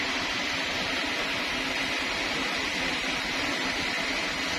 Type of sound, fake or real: real